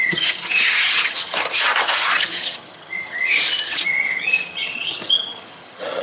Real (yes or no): no